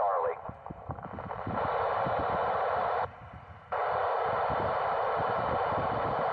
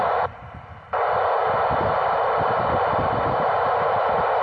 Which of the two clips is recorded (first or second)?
second